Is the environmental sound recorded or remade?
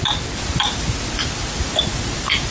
recorded